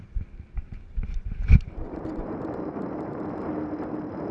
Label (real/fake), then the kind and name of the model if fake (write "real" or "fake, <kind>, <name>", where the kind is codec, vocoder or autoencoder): fake, vocoder, BigVGAN v2